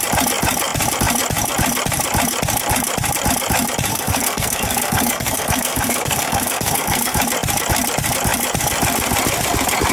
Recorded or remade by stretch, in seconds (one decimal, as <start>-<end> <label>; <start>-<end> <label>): 0.0-3.9 recorded; 3.9-7.2 remade; 7.2-9.9 recorded